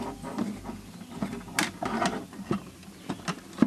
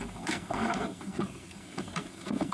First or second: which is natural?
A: first